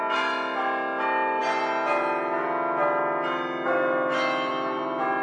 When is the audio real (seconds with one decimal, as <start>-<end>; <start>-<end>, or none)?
0.0-5.2